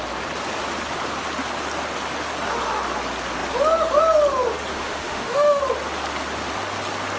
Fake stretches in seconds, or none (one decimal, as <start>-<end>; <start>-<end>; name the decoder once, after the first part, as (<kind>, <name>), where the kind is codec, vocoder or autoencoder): 4.7-5.6 (autoencoder, DAC-VAE)